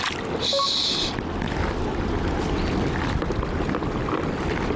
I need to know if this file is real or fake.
real